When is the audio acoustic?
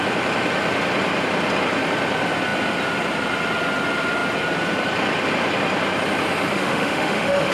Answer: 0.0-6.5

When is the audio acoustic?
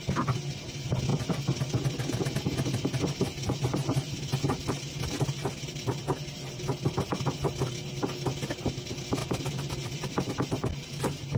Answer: 0.0-11.4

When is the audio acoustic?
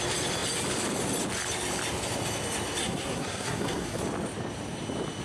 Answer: 0.0-2.8; 4.0-5.2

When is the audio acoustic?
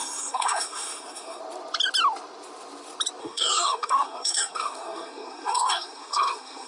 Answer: 1.4-3.2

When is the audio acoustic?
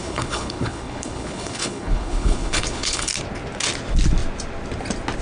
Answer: 3.1-5.2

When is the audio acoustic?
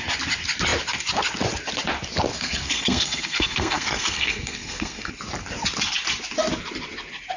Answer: 0.0-2.3; 5.1-7.4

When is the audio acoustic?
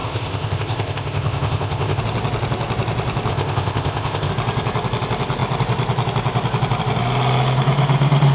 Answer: 2.0-3.3; 4.3-8.3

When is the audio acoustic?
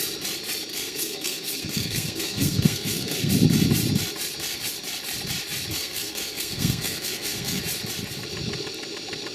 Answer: 0.0-0.7; 3.3-5.7; 7.6-9.3